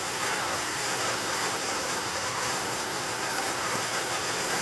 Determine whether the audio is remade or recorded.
remade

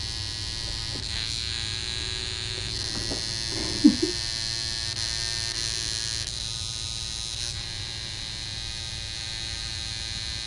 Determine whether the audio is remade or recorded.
recorded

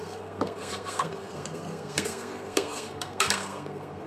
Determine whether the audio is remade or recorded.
remade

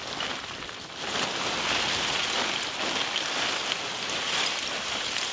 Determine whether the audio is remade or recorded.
recorded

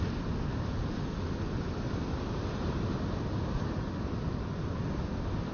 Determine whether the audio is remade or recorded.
recorded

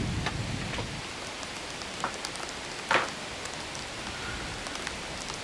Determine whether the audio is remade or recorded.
recorded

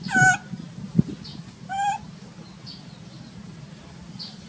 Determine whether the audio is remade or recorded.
recorded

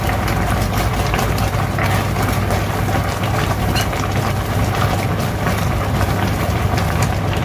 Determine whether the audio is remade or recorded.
recorded